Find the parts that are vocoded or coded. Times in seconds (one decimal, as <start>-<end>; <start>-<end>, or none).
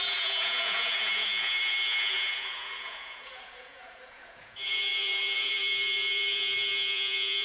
0.0-7.4